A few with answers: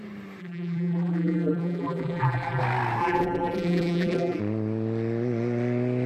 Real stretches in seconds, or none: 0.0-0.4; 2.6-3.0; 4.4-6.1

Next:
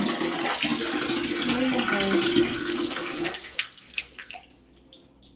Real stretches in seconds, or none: 0.0-2.5; 4.4-5.4

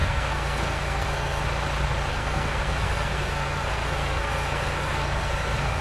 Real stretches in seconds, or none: 1.4-2.1

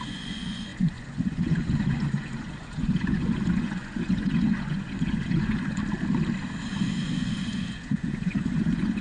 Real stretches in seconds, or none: 5.8-6.9

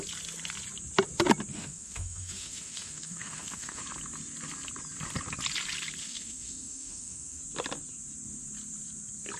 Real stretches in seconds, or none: 0.0-1.5; 3.8-6.0; 7.4-9.4

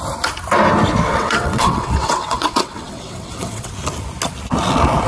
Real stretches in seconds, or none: 0.0-1.1; 3.7-5.1

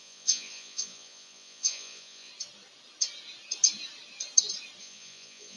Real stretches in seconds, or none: 2.3-4.8